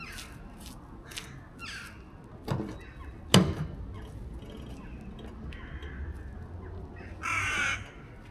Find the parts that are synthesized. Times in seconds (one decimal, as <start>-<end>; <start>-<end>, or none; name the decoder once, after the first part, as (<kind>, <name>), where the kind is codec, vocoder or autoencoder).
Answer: none